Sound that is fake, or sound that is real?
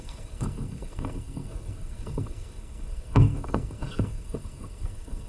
fake